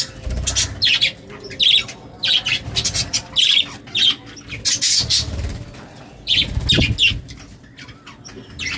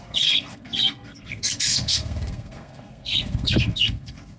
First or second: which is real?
first